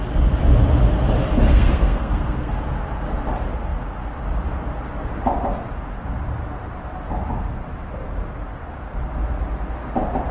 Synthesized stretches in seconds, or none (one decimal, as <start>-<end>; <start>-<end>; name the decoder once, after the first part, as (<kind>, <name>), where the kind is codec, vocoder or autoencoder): 1.5-2.5 (codec, SNAC)